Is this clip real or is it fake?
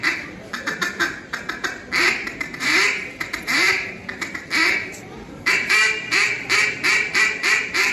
fake